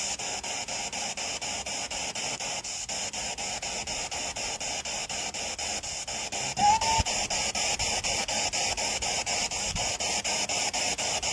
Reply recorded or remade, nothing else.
recorded